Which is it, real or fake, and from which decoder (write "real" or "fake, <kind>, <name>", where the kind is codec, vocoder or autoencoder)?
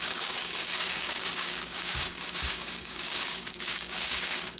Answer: fake, codec, DAC